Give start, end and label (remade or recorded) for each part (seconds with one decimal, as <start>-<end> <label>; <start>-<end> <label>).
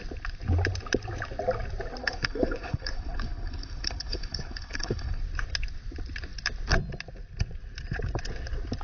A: 0.0-2.0 recorded; 2.0-5.2 remade; 5.2-8.8 recorded